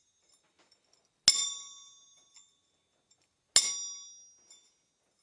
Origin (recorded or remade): recorded